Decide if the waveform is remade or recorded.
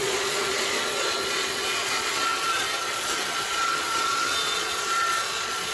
remade